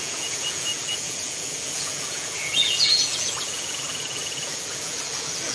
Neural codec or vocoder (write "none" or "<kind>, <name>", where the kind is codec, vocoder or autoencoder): vocoder, Vocos